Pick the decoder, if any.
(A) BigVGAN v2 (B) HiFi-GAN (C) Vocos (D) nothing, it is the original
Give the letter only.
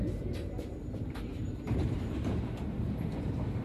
A